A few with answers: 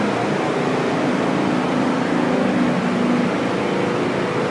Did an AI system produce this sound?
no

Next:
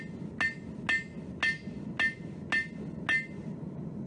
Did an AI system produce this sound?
no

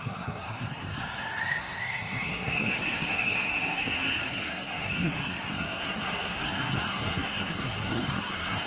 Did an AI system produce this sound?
yes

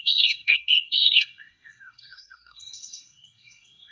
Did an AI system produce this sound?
yes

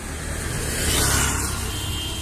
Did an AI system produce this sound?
no